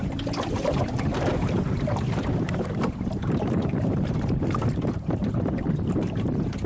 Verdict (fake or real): fake